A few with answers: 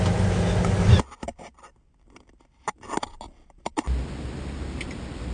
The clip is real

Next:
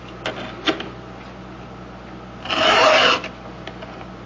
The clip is real